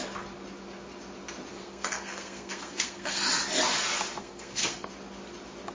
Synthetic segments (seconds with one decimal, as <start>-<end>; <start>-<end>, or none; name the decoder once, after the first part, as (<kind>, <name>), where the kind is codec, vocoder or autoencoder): 1.5-3.3 (codec, SNAC); 4.2-4.9